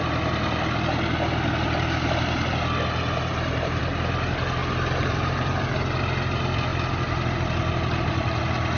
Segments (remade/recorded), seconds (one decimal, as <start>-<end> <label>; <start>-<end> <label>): 0.0-3.3 recorded; 3.3-3.8 remade; 3.8-4.6 recorded; 4.6-5.7 remade; 5.7-8.8 recorded